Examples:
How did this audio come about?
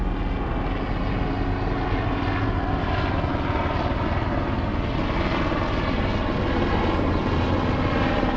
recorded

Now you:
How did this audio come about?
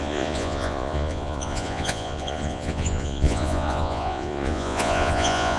remade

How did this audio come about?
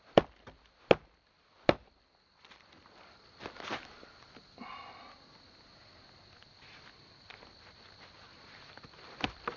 recorded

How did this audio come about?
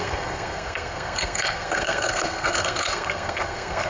remade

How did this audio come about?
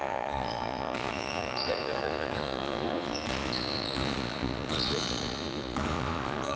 remade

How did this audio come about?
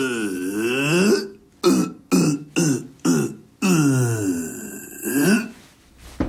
recorded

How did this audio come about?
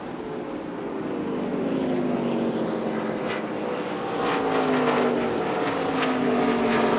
recorded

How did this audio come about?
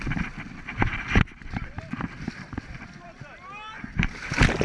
recorded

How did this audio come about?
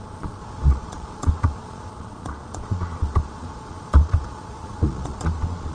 remade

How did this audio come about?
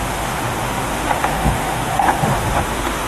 remade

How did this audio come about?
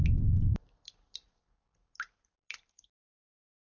recorded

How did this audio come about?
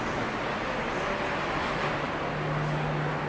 recorded